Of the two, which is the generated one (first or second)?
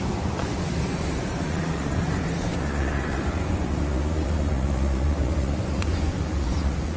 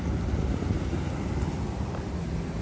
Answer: first